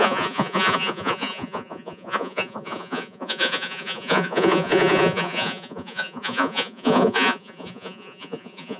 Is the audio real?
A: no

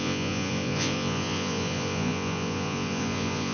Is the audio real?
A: no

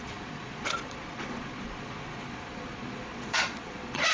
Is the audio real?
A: no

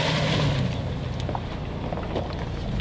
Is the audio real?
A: yes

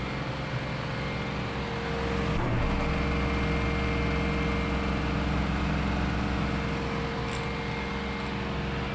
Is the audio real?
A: yes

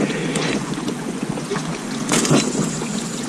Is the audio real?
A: no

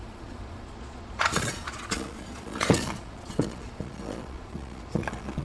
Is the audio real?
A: no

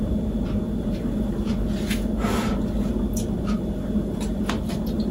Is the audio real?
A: yes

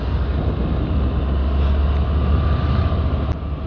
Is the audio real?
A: yes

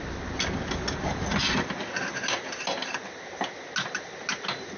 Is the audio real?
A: yes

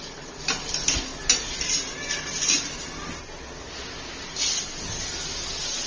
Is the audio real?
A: yes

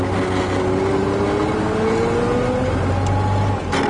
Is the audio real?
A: yes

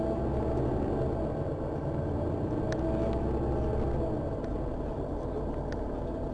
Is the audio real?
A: yes